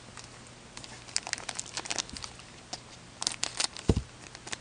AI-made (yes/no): no